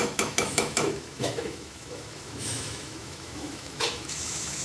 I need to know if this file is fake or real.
fake